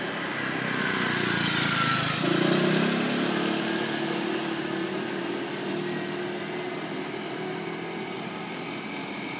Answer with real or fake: real